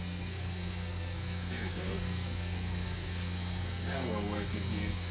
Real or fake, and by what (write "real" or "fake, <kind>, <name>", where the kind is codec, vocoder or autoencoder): fake, codec, SNAC